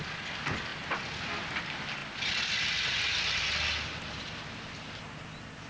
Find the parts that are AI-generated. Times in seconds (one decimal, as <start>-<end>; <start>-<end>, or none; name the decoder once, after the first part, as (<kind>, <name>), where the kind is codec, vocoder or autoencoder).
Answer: none